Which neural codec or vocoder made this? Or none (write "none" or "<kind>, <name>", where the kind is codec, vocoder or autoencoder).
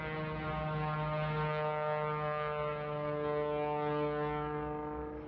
none